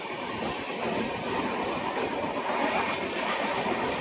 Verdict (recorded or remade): recorded